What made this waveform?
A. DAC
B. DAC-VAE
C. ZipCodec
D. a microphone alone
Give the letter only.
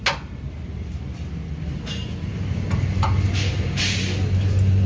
D